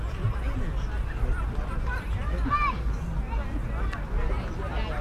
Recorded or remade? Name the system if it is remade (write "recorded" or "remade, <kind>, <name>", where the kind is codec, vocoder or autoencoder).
recorded